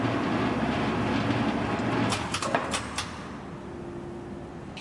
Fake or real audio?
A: real